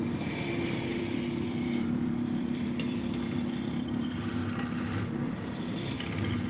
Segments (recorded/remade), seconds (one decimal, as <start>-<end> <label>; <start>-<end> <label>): 0.0-6.5 remade